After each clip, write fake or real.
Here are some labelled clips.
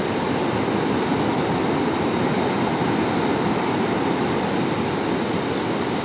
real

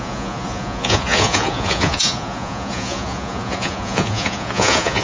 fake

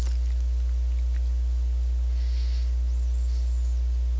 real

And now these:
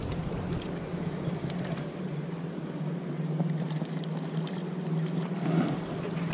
real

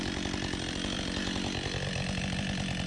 real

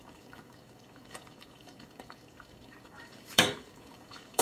fake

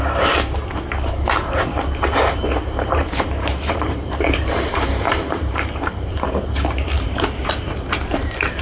fake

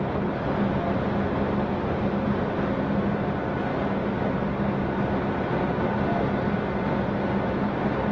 real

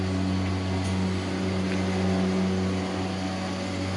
real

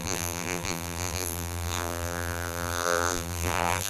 fake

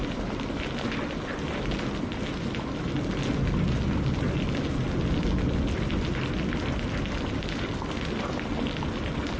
real